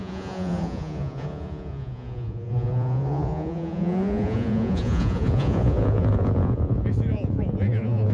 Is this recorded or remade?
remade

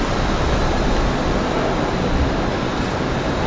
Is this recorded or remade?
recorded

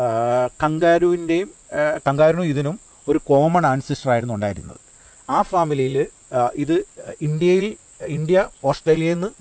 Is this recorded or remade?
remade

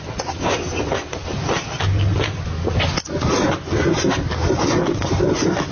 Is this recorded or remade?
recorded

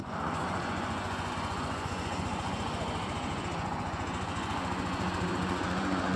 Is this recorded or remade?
remade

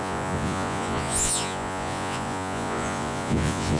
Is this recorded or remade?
remade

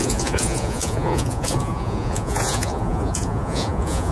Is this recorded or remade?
remade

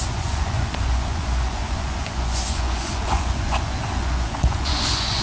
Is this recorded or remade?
remade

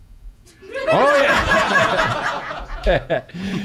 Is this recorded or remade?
remade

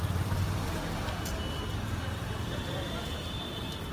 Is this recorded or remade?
recorded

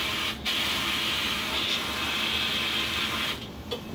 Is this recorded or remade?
recorded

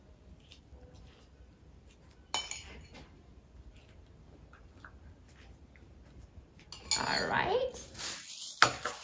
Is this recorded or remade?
recorded